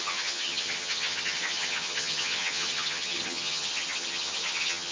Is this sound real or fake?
fake